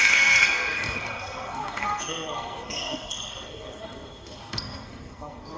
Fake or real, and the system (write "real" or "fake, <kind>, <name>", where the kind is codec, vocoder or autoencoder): fake, codec, SNAC